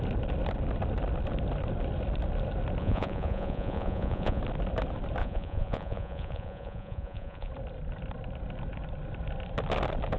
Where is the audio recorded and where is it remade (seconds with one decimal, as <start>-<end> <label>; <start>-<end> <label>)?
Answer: 0.0-2.8 recorded; 2.8-4.4 remade; 4.4-5.2 recorded; 5.2-7.5 remade; 7.5-10.2 recorded